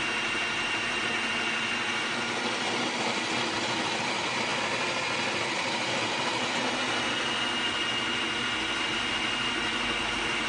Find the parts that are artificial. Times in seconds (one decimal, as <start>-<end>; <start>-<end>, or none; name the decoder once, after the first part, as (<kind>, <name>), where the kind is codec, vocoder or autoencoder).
none